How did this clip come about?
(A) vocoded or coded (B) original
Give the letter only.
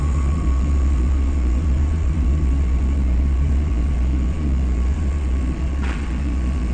A